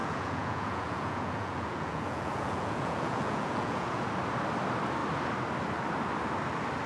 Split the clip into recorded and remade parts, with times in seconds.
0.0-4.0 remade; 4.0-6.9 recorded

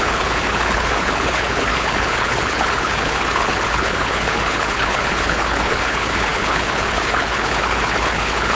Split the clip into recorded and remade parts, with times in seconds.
0.0-8.6 remade